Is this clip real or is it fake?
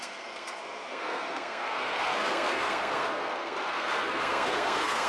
fake